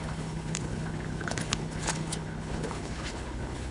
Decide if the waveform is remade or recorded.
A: remade